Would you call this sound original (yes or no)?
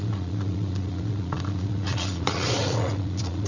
no